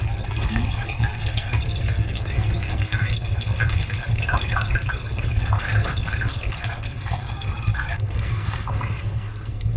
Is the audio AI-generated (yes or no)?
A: yes